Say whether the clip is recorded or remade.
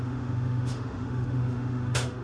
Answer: remade